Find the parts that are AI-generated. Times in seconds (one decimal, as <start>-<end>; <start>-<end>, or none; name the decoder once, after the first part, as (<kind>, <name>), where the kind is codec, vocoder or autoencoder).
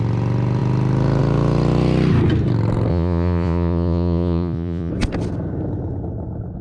2.9-4.9 (vocoder, Vocos)